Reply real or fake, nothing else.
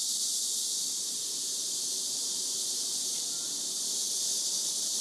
fake